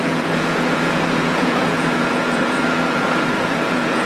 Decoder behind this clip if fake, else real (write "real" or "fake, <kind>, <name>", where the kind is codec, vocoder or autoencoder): fake, vocoder, Vocos